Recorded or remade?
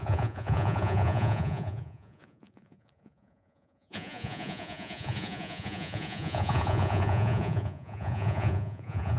remade